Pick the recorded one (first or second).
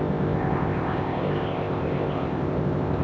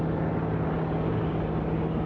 second